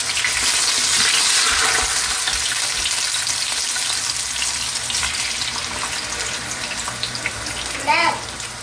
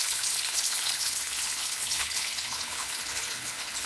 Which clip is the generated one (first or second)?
second